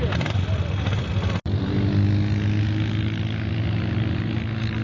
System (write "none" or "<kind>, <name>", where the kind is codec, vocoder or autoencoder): none